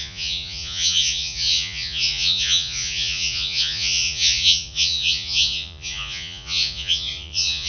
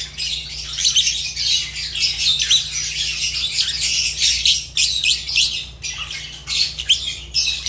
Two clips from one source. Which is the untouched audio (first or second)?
second